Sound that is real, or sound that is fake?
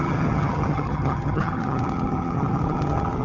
fake